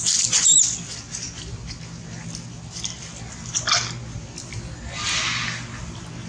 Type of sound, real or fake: real